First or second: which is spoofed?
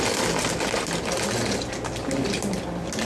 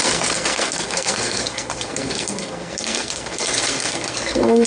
second